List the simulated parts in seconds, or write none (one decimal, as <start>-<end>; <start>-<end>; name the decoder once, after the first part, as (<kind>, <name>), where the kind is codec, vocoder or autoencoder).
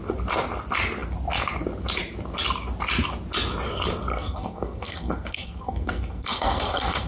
4.1-7.1 (codec, SNAC)